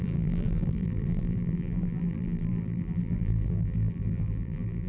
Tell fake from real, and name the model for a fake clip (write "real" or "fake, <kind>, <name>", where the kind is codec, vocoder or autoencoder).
fake, vocoder, BigVGAN v2